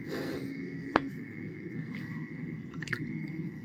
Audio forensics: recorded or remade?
remade